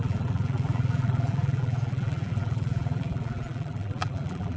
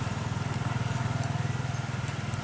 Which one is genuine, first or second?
second